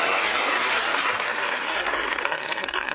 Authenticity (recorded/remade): remade